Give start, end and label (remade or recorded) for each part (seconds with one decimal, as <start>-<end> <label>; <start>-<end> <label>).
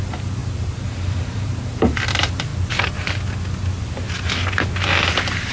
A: 0.0-2.5 remade; 2.5-5.5 recorded